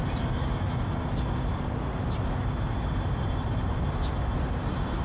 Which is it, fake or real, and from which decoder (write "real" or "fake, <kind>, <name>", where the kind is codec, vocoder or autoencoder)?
real